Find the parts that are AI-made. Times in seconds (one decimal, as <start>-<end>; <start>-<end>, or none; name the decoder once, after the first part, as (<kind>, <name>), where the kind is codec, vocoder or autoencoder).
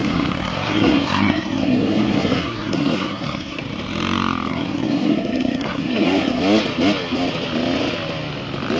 0.0-3.6 (codec, SNAC); 4.5-6.4